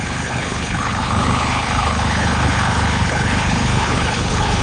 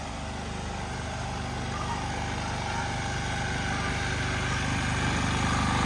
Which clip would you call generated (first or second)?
first